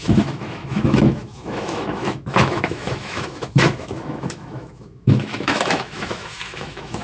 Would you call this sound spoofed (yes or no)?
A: yes